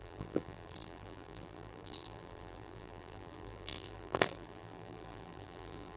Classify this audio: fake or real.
fake